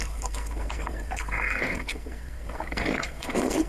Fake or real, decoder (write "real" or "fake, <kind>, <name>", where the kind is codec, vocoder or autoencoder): fake, codec, SNAC